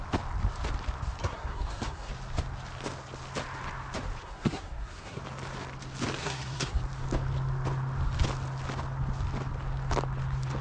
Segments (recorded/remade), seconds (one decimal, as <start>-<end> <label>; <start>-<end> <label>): 0.0-1.2 recorded; 1.2-2.1 remade; 2.1-4.2 recorded; 4.2-5.2 remade; 5.2-6.2 recorded; 6.2-6.8 remade; 6.8-10.6 recorded